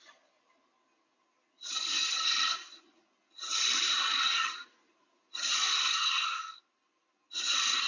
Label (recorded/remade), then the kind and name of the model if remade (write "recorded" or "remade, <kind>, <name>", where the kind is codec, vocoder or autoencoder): recorded